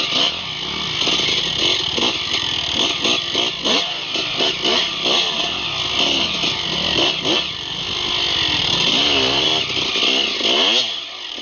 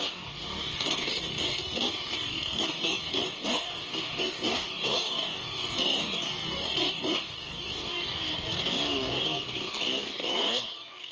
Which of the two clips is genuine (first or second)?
first